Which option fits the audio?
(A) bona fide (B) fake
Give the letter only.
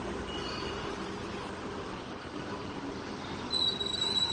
A